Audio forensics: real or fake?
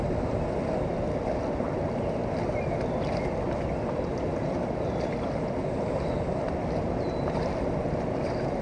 real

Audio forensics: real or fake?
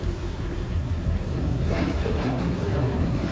fake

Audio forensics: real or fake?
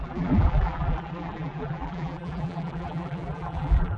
fake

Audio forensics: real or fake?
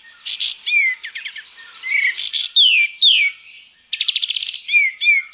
real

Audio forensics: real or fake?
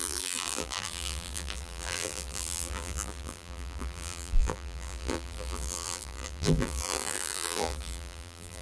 fake